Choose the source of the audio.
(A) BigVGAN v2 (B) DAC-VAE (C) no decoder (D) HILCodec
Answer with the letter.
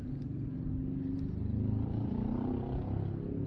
C